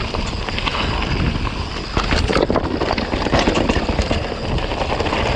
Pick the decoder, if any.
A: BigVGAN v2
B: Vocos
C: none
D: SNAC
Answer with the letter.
C